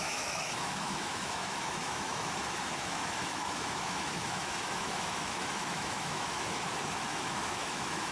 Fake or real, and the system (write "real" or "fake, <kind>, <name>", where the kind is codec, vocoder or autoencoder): fake, autoencoder, DAC-VAE